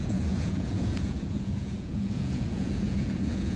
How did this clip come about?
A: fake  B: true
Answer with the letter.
A